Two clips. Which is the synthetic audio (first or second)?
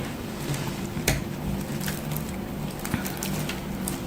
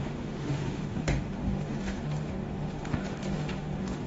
second